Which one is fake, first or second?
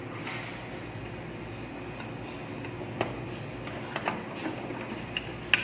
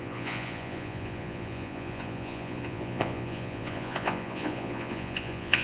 second